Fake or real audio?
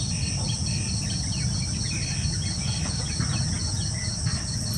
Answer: real